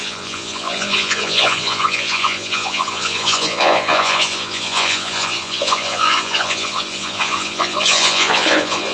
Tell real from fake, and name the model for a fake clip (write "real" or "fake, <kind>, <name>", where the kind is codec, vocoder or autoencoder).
fake, vocoder, Vocos